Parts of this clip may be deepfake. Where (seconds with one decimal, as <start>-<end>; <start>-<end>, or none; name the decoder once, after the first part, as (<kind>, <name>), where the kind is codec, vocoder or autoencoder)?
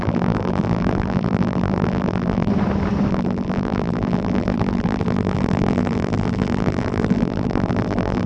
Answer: 0.0-2.5 (vocoder, BigVGAN v2); 3.1-8.3